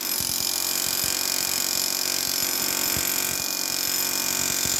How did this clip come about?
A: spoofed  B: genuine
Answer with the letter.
B